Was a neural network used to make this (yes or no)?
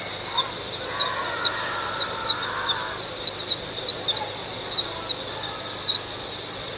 no